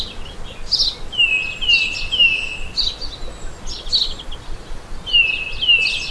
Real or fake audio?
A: real